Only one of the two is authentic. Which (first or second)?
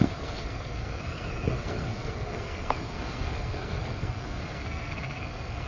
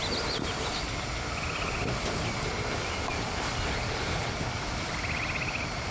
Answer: second